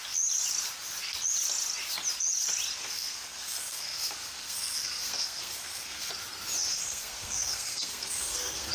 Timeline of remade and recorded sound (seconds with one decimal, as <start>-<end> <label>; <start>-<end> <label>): 0.0-2.8 recorded; 2.8-6.1 remade; 6.1-6.7 recorded; 6.7-8.7 remade